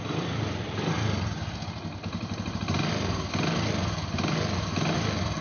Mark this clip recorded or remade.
recorded